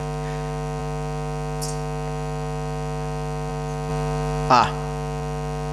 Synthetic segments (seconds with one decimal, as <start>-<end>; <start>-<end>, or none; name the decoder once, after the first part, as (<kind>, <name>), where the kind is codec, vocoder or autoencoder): none